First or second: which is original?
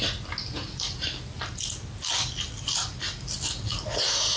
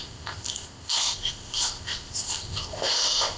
first